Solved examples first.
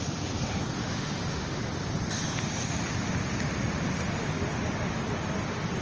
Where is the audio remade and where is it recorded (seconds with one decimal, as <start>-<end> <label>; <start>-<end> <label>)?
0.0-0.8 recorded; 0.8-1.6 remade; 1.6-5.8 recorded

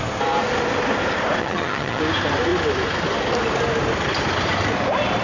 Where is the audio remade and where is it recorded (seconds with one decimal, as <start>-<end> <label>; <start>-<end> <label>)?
0.0-1.4 recorded; 1.4-2.0 remade; 2.0-5.2 recorded

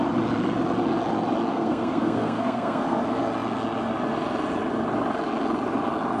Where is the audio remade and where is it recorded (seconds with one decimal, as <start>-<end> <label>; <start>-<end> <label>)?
0.0-1.5 recorded; 1.5-3.0 remade; 3.0-6.2 recorded

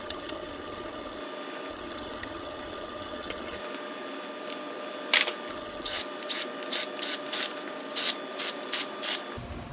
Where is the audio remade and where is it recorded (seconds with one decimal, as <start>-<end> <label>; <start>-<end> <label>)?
0.0-1.2 remade; 1.2-1.7 recorded; 1.7-3.6 remade; 3.6-5.5 recorded; 5.5-6.0 remade; 6.0-9.7 recorded